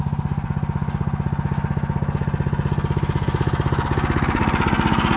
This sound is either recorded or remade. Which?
recorded